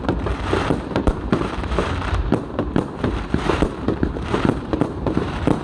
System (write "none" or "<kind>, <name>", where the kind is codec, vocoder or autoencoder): vocoder, BigVGAN v2